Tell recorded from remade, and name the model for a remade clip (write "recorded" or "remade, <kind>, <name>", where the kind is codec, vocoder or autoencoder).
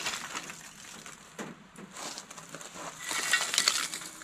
recorded